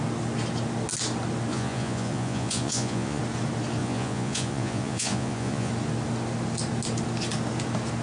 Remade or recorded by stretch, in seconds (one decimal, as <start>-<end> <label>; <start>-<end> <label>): 0.0-1.5 recorded; 1.5-3.2 remade; 3.2-3.8 recorded; 3.8-5.7 remade; 5.7-8.0 recorded